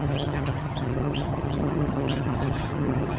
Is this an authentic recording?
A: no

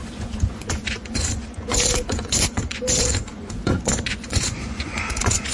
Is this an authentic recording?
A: no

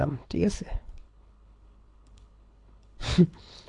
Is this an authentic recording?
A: no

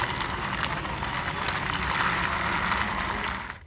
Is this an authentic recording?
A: yes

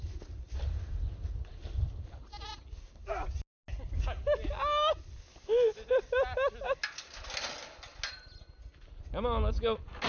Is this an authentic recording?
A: yes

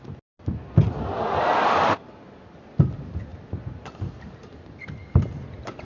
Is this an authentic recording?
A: yes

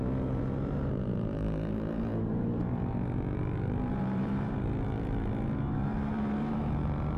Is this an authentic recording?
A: no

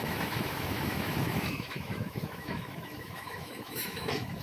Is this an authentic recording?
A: no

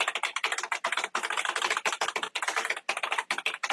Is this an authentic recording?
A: yes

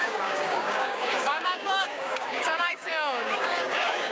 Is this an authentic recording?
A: no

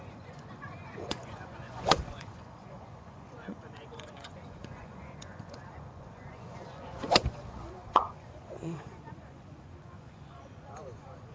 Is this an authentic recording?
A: no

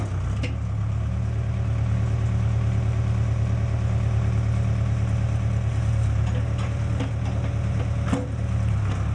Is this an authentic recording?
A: yes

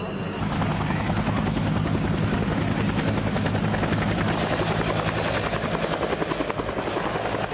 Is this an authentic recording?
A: yes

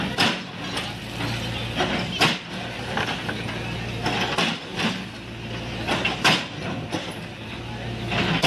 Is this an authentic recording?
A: yes